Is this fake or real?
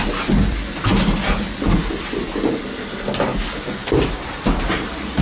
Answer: real